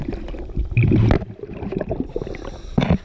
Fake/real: real